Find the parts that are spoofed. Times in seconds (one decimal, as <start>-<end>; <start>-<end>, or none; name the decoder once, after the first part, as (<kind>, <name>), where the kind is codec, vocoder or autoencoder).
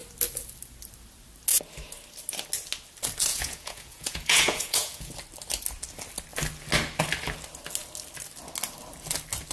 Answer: 3.3-5.1 (vocoder, Vocos)